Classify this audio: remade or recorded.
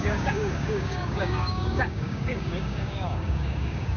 remade